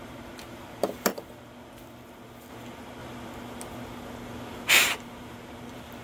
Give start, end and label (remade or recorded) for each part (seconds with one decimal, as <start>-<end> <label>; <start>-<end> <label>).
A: 0.0-1.1 remade; 1.1-2.5 recorded; 2.5-3.0 remade; 3.0-4.7 recorded; 4.7-6.0 remade